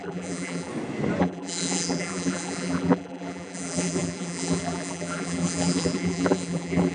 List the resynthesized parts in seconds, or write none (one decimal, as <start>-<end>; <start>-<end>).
0.0-0.7; 1.2-6.9